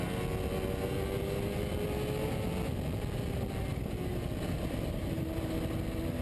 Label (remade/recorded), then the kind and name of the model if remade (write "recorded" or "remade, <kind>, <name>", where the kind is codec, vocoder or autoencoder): recorded